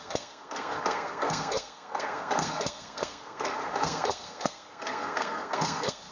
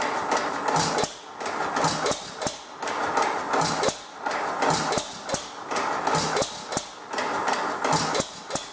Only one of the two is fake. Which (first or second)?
first